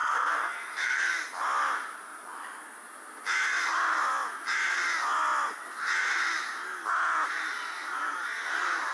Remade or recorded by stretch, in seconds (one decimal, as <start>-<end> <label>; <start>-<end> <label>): 0.0-1.1 remade; 1.1-8.9 recorded